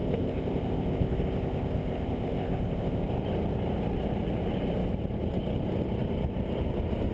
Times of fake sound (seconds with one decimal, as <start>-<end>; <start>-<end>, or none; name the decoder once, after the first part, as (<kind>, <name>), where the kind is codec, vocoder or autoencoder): 0.0-3.0 (codec, ZipCodec)